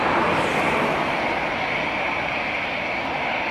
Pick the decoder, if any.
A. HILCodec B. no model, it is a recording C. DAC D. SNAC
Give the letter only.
B